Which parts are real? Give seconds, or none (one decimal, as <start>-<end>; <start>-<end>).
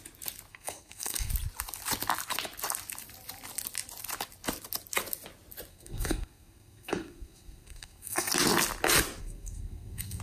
0.0-0.5; 1.3-5.7; 8.3-9.2